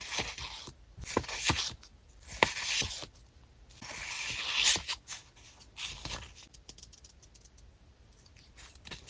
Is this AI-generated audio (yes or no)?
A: no